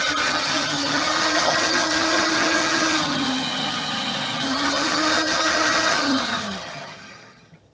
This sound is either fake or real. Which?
fake